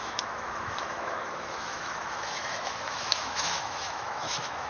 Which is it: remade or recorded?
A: remade